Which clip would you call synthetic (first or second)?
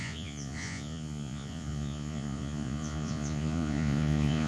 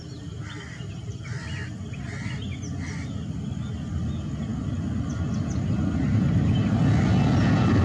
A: first